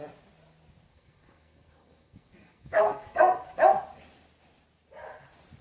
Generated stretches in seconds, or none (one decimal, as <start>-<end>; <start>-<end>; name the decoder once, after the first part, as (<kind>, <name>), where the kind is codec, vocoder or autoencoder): 0.9-3.6 (codec, SNAC)